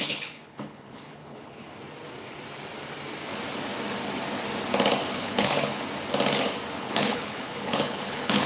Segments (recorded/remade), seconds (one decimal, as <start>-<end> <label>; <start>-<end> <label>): 0.0-1.7 remade; 1.7-5.1 recorded; 5.1-5.7 remade; 5.7-6.8 recorded; 6.8-8.5 remade